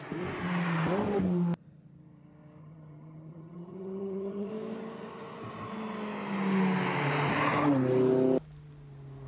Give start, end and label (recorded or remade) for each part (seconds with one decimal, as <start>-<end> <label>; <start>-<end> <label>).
0.0-2.6 recorded; 2.6-4.5 remade; 4.5-9.3 recorded